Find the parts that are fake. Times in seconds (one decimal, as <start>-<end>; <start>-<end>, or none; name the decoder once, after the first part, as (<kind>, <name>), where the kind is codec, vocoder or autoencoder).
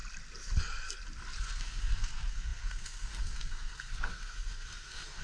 1.4-5.2 (codec, SNAC)